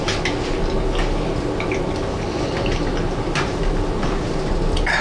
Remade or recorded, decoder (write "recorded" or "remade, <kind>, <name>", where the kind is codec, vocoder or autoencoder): recorded